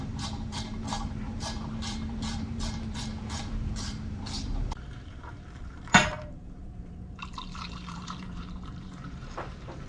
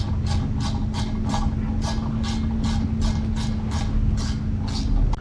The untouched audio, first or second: second